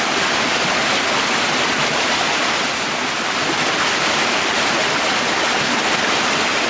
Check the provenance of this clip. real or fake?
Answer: real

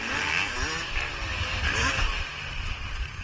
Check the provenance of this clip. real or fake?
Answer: real